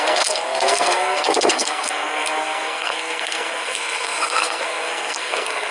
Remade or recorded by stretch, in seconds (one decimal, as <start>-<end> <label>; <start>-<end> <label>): 0.0-5.7 remade